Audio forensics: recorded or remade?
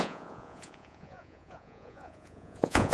remade